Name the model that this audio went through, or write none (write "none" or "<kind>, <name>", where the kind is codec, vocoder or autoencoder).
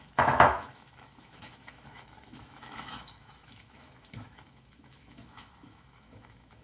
autoencoder, DAC-VAE